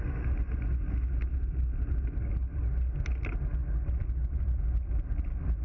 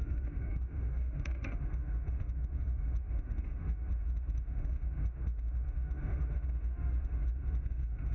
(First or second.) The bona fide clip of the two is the first